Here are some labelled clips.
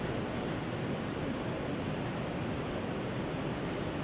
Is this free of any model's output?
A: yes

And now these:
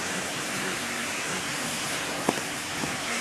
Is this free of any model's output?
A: no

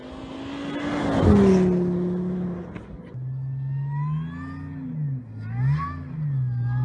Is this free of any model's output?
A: yes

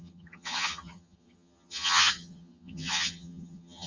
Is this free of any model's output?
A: no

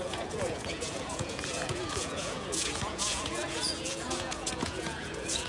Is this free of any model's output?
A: no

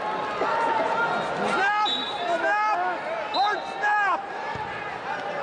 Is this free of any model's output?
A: yes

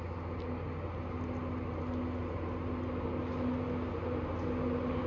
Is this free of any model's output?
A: yes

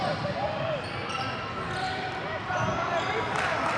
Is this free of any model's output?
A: yes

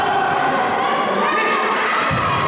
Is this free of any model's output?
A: yes